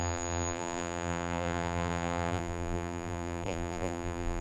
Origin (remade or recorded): remade